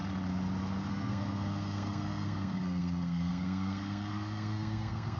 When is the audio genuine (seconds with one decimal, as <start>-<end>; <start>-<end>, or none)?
0.0-0.9